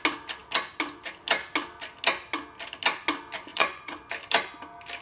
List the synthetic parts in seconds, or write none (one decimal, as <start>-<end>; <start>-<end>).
3.5-4.1